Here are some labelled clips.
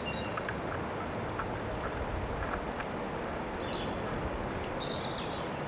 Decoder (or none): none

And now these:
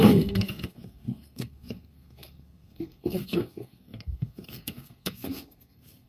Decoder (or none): codec, SNAC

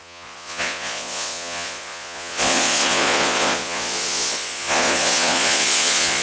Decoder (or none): vocoder, Vocos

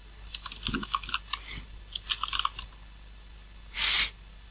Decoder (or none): none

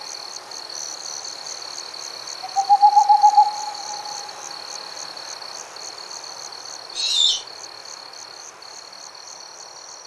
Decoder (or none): none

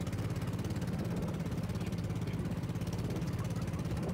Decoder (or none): none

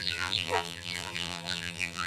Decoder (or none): vocoder, BigVGAN v2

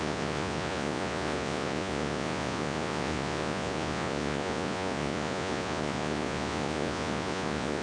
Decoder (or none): vocoder, Vocos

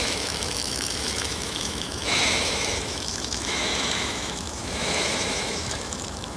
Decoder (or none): autoencoder, DAC-VAE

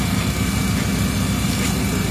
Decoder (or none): none